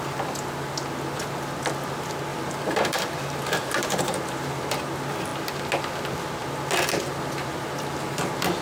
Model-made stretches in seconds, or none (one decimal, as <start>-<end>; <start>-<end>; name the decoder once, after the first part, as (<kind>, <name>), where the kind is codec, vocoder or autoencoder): 2.3-4.8 (vocoder, BigVGAN v2)